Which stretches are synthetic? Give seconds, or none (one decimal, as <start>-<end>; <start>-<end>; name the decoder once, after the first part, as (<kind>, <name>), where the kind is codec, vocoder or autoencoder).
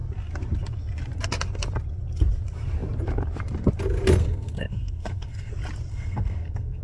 4.2-5.5 (codec, SNAC); 5.9-6.8